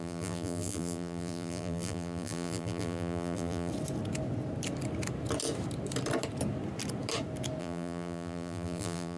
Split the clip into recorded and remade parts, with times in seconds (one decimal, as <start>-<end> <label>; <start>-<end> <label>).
0.0-3.7 remade; 3.7-7.6 recorded; 7.6-9.2 remade